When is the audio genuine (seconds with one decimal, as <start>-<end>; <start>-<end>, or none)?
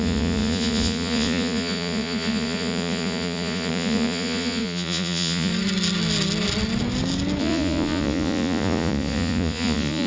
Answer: 5.5-7.4